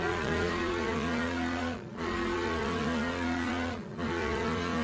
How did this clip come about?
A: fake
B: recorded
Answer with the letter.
A